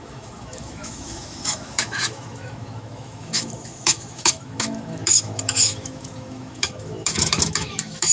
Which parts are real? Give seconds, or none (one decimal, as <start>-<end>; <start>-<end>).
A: none